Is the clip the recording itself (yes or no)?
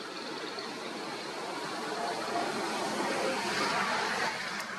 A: yes